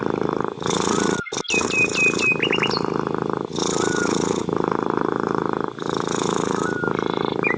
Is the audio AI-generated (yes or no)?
no